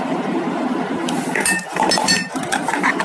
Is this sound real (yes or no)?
yes